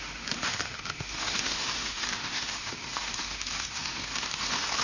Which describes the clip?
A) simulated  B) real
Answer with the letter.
A